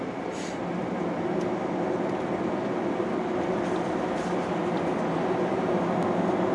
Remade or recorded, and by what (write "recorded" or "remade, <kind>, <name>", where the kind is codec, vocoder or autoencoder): recorded